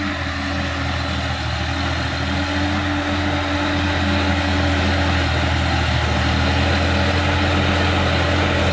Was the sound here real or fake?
real